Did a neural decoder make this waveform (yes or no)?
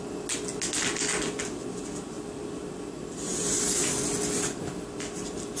no